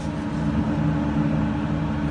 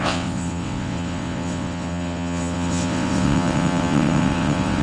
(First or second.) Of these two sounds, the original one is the first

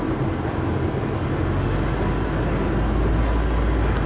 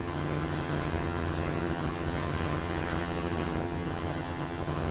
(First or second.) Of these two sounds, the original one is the first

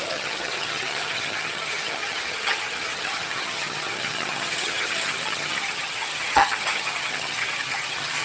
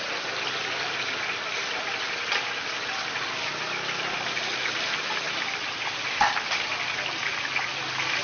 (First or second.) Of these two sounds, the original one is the second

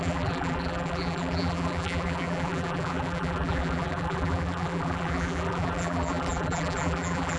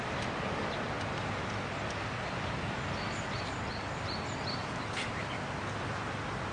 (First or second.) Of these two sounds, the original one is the second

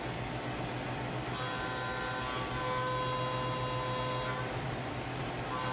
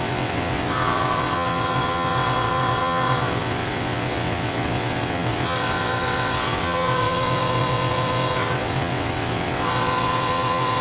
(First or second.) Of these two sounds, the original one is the first